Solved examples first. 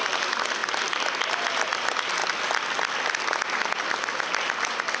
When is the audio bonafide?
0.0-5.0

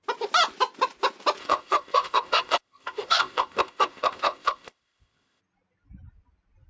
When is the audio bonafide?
0.0-1.4; 5.4-6.7

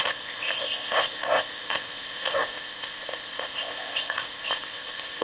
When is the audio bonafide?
none

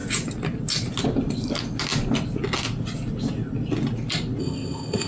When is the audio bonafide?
0.0-4.4

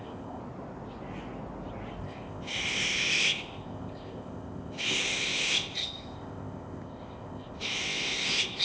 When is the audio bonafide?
0.4-2.0

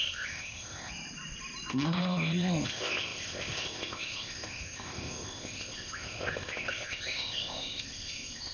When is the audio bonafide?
0.9-1.7

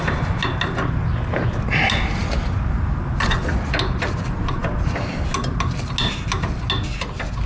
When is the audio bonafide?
0.0-7.5

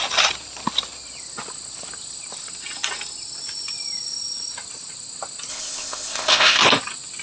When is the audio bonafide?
0.0-5.5; 6.6-7.2